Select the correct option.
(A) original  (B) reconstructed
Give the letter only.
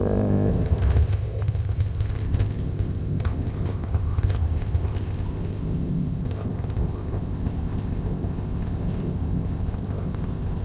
B